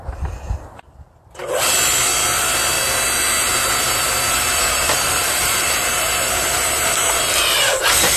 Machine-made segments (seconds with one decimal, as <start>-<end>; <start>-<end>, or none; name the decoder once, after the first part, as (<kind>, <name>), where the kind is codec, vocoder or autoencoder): 3.4-6.7 (vocoder, BigVGAN v2)